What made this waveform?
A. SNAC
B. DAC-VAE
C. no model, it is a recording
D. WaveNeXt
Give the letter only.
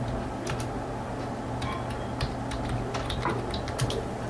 C